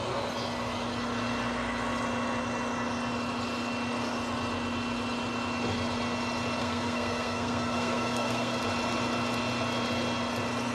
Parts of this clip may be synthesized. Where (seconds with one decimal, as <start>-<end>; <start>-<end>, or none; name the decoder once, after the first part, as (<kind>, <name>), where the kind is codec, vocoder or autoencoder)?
6.6-8.6 (codec, SNAC)